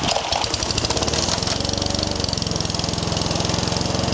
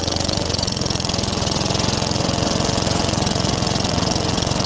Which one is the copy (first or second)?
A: second